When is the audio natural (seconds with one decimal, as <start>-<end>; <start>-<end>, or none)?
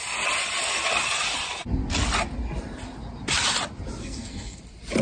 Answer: 0.0-4.0; 4.6-5.0